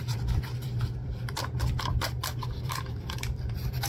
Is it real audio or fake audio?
fake